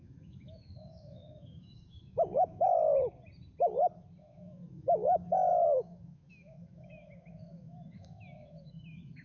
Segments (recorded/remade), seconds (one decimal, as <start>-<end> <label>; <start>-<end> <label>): 0.0-2.8 remade; 2.8-4.2 recorded; 4.2-9.2 remade